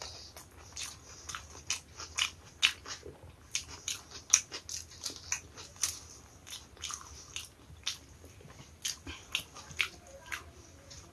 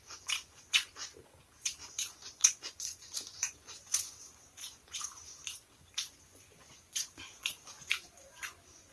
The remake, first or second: second